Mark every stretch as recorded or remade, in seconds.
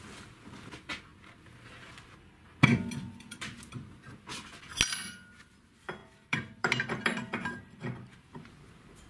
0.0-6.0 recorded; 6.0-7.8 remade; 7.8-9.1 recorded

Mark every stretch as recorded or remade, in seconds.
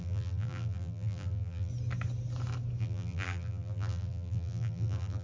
0.0-1.7 remade; 1.7-2.8 recorded; 2.8-5.2 remade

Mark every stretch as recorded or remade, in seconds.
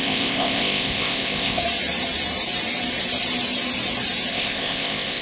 0.0-1.6 remade; 1.6-4.3 recorded; 4.3-5.2 remade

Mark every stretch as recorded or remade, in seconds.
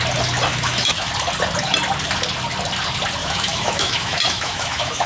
0.0-0.5 recorded; 0.5-1.1 remade; 1.1-3.2 recorded; 3.2-5.1 remade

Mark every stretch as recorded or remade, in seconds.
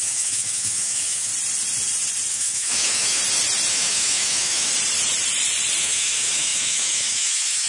0.0-1.3 remade; 1.3-2.3 recorded; 2.3-3.2 remade; 3.2-3.7 recorded; 3.7-4.7 remade; 4.7-5.8 recorded; 5.8-7.7 remade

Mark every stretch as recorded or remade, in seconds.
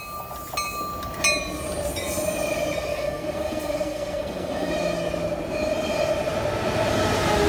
0.0-2.9 recorded; 2.9-4.7 remade; 4.7-7.5 recorded